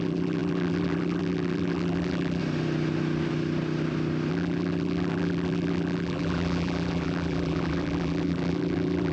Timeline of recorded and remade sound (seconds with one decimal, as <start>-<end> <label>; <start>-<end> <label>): 0.0-2.4 remade; 2.4-4.3 recorded; 4.3-9.1 remade